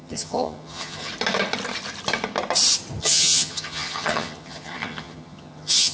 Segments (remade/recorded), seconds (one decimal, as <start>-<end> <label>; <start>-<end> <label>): 0.0-1.1 remade; 1.1-3.0 recorded; 3.0-5.9 remade